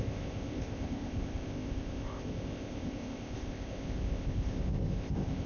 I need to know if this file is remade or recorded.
remade